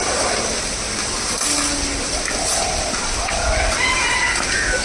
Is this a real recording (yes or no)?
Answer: yes